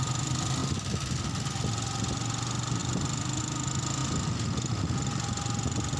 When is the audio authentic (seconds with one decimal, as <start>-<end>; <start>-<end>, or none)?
0.0-6.0